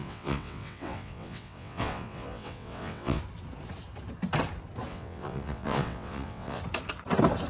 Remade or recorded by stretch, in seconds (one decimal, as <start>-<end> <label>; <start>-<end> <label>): 0.0-3.2 remade; 3.2-4.9 recorded; 4.9-6.6 remade; 6.6-7.5 recorded